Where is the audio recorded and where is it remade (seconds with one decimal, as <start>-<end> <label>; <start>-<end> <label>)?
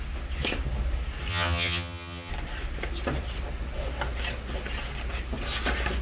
0.0-1.3 recorded; 1.3-2.3 remade; 2.3-6.0 recorded